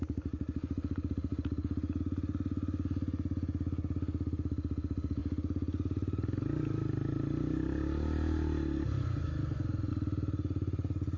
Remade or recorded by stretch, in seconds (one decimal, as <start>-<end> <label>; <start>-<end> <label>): 0.0-11.2 recorded

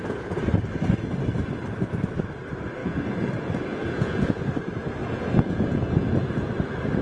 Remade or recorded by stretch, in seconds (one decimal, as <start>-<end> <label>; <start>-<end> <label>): 0.0-2.8 recorded; 2.8-3.3 remade; 3.3-3.7 recorded; 3.7-4.4 remade; 4.4-5.0 recorded; 5.0-6.5 remade; 6.5-7.0 recorded